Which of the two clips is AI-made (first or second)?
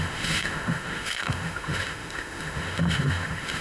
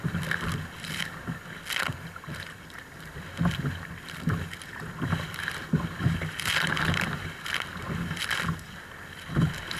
first